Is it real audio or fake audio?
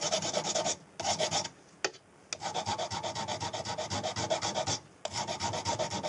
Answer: real